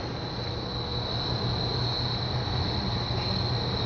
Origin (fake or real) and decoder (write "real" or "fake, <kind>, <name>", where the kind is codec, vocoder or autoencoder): real